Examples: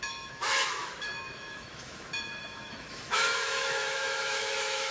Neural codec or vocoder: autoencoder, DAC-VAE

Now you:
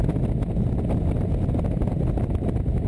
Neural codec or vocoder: none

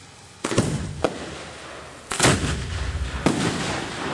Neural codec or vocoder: none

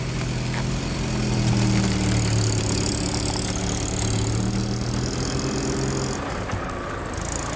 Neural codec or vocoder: none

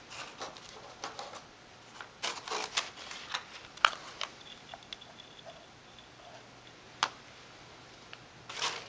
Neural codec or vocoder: none